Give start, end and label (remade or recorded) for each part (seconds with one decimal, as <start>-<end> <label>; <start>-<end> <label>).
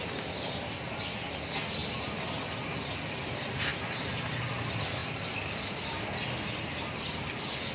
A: 0.0-1.8 recorded; 1.8-2.6 remade; 2.6-7.7 recorded